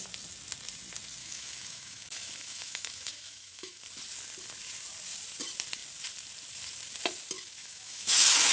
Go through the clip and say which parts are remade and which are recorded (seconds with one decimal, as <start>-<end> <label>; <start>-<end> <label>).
0.0-1.2 recorded; 1.2-3.8 remade; 3.8-7.6 recorded; 7.6-8.5 remade